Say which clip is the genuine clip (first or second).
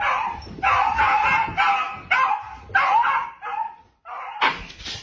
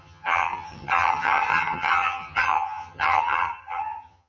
first